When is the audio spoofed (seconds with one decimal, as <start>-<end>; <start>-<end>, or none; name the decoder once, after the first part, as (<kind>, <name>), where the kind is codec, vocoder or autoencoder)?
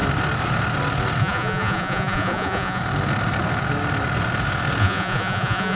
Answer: 1.2-2.8 (vocoder, Vocos); 4.8-5.8